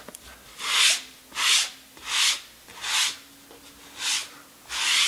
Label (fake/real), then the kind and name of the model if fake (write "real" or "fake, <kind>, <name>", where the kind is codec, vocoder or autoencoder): real